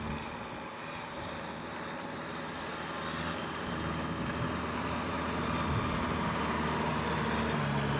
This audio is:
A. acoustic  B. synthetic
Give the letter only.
A